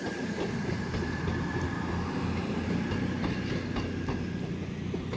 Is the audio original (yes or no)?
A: yes